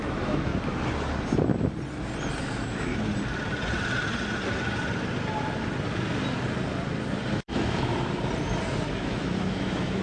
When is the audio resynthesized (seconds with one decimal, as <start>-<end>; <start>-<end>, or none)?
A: 0.0-0.5; 2.4-2.9; 7.3-7.9; 8.9-10.0

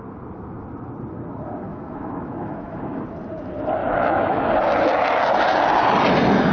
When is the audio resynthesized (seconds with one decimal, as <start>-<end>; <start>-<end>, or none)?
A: 1.7-3.0; 3.8-4.5

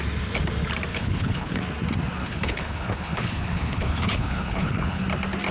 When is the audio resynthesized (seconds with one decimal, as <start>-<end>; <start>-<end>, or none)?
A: 0.9-1.6; 2.2-5.0

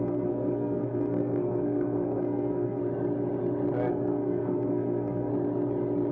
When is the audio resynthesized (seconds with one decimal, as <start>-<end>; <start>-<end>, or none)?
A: 0.0-2.8; 3.9-5.3

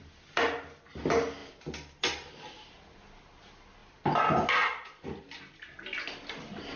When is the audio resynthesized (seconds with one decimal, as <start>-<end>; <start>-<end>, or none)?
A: none